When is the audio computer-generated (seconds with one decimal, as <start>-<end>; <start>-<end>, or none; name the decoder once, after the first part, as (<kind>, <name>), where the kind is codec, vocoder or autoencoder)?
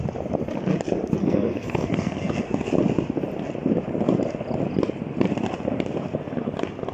1.2-2.7 (codec, SNAC)